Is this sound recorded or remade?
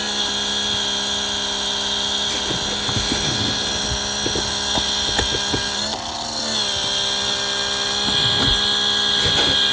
recorded